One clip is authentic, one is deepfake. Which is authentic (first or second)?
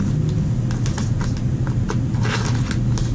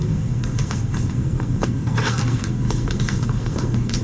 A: first